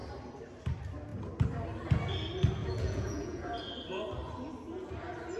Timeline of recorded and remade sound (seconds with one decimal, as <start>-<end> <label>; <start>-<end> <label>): 0.0-2.6 recorded; 2.6-3.7 remade; 3.7-5.4 recorded